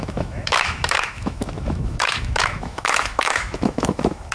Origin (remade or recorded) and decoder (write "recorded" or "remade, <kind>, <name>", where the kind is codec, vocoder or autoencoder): remade, autoencoder, DAC-VAE